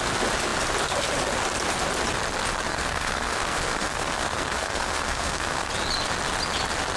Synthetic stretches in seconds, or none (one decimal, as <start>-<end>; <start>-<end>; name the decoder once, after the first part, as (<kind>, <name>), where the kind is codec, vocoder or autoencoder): 2.7-5.7 (codec, SNAC)